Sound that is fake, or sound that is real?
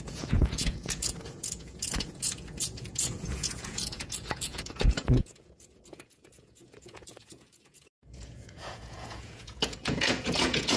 fake